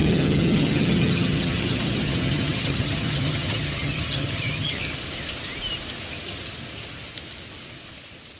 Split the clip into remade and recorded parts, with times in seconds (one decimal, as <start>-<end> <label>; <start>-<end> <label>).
0.0-4.8 remade; 4.8-8.4 recorded